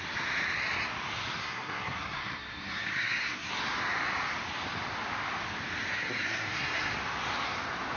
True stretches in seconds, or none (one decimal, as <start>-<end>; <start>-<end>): 0.0-1.4; 3.5-5.9; 6.9-8.0